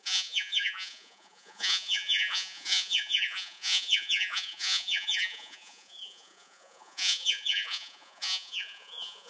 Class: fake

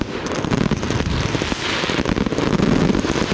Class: real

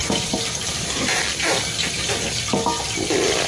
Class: fake